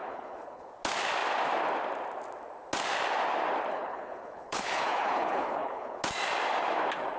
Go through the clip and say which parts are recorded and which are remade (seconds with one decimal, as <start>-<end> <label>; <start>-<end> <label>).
0.0-0.7 remade; 0.7-3.7 recorded; 3.7-6.0 remade; 6.0-7.2 recorded